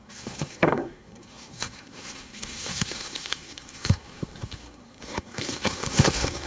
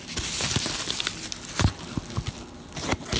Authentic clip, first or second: second